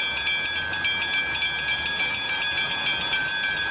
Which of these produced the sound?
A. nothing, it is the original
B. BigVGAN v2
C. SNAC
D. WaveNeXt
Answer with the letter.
A